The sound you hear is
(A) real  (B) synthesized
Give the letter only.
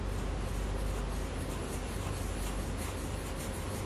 A